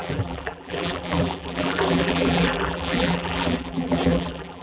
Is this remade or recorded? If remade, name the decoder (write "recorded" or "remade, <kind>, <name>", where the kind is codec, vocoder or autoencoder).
remade, vocoder, BigVGAN v2